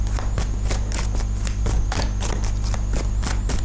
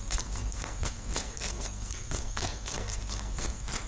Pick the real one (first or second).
first